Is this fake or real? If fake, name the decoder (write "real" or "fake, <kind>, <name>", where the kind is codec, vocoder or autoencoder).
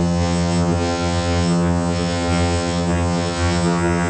fake, vocoder, HiFi-GAN